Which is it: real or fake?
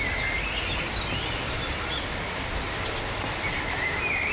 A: real